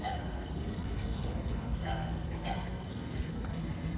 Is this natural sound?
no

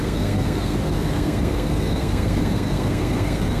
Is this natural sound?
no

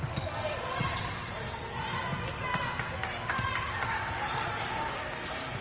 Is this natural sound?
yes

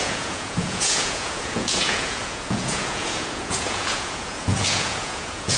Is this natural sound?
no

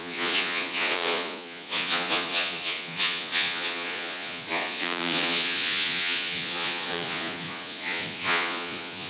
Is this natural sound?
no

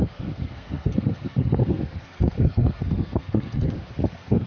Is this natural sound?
no